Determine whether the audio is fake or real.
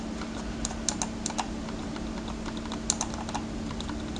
real